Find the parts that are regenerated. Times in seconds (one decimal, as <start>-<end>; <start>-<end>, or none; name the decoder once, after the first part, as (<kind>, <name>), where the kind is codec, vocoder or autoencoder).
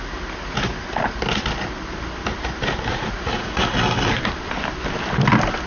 2.9-3.8 (vocoder, Vocos)